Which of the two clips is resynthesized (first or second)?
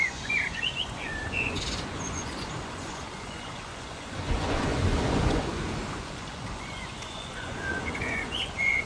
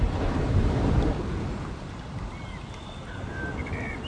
first